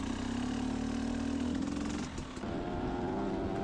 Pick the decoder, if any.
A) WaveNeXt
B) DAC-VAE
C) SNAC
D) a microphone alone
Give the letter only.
D